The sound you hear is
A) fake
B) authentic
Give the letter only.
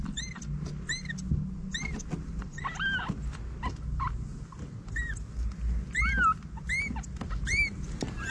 B